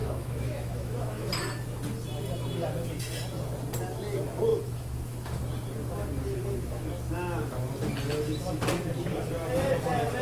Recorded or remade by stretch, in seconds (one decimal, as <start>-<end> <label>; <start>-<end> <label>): 0.0-1.3 remade; 1.3-4.5 recorded; 4.5-5.4 remade; 5.4-10.2 recorded